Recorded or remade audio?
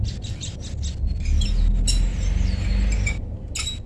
recorded